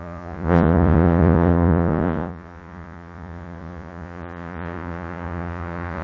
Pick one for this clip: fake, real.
fake